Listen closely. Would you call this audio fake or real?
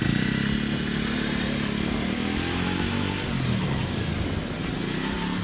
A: real